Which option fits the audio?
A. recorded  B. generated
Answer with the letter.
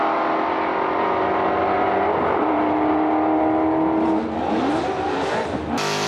A